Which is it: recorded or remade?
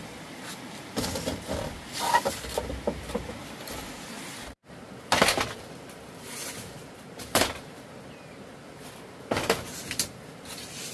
recorded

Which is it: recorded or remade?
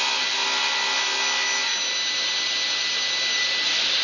recorded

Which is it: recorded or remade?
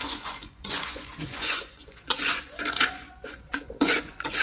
remade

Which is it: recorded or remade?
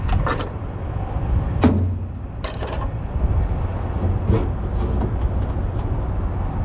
recorded